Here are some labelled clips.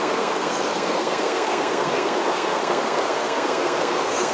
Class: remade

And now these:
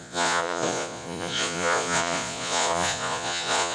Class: remade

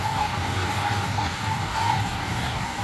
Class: remade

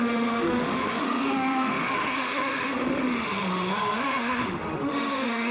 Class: remade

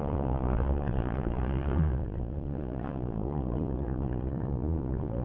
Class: remade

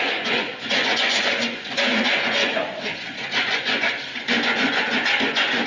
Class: remade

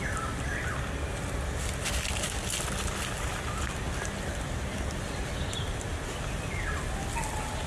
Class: recorded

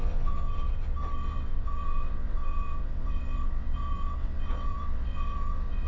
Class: remade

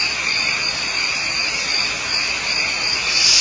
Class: recorded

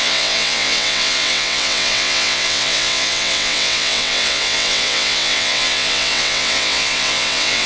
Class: remade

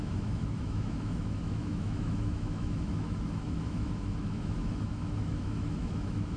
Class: remade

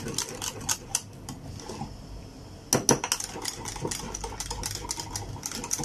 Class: recorded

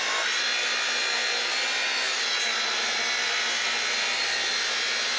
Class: recorded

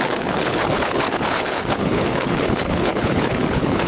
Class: remade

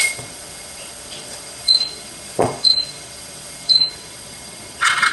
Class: remade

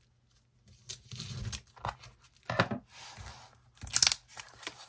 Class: recorded